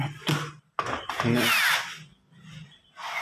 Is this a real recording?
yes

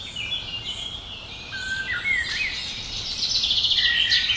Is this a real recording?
yes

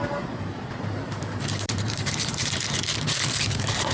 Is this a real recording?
no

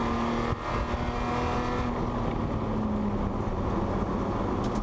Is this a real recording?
yes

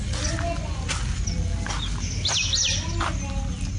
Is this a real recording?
yes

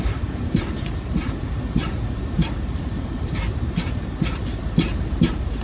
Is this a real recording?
no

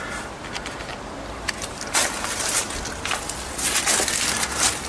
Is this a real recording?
yes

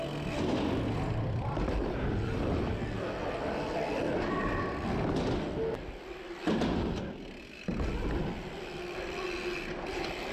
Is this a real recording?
yes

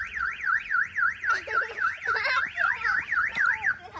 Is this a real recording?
yes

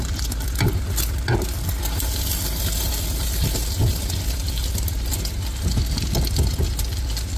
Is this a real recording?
yes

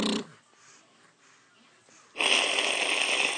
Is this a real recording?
yes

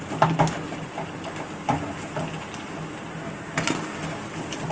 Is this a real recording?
yes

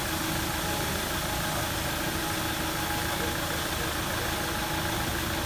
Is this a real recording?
yes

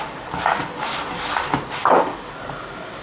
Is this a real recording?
yes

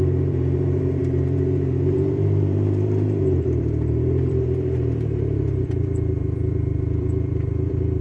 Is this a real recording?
no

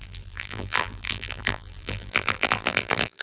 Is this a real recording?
no